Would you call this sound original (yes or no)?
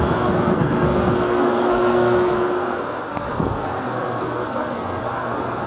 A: no